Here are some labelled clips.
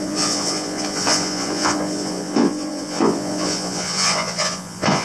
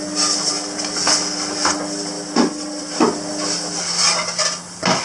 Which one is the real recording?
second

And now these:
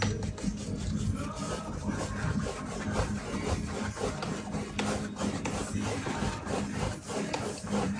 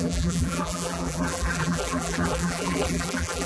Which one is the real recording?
first